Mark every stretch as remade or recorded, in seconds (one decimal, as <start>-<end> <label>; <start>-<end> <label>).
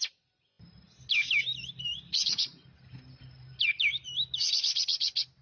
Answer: 0.0-5.4 recorded